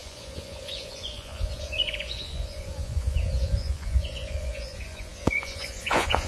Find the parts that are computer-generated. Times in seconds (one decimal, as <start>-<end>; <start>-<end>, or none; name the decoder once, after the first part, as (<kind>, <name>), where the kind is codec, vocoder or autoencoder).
0.0-6.3 (vocoder, Vocos)